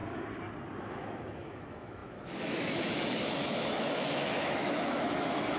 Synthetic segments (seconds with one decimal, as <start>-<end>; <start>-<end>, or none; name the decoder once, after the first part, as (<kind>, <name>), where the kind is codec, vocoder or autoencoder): 0.8-5.6 (autoencoder, DAC-VAE)